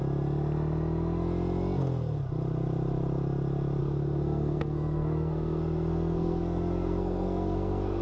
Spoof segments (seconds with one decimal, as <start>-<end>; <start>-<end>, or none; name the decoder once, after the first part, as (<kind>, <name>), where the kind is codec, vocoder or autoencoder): 3.8-8.0 (codec, SNAC)

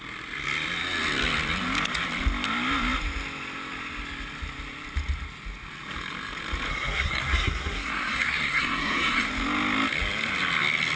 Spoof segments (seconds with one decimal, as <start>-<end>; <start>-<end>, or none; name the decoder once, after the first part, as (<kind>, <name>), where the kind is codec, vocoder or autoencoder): 6.7-9.3 (codec, SNAC)

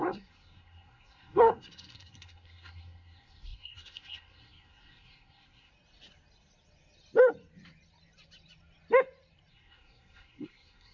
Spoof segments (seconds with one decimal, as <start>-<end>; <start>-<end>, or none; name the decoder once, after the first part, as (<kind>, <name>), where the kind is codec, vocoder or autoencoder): 0.0-5.7 (codec, SNAC); 9.5-10.9